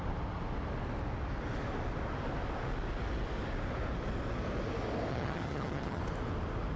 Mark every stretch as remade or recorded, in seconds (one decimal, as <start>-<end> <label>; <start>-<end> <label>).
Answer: 0.0-5.1 recorded; 5.1-6.0 remade; 6.0-6.8 recorded